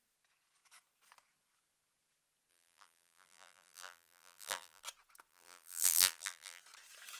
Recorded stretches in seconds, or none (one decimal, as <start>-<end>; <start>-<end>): 0.0-2.5; 4.8-5.3; 6.6-7.2